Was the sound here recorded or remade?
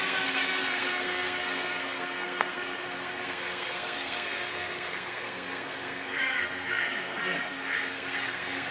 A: remade